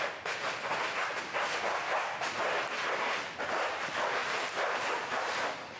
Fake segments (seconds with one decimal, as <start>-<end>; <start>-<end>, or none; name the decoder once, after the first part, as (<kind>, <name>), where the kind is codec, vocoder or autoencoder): 4.2-5.8 (vocoder, BigVGAN v2)